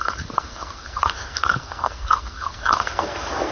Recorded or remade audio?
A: remade